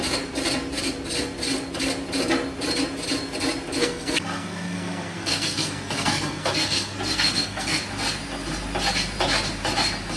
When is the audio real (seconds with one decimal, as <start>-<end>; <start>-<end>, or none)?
0.0-3.8; 7.8-10.2